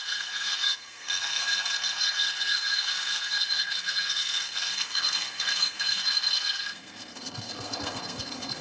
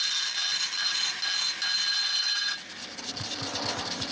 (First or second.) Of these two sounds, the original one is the second